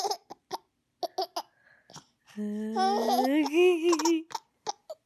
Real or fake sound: real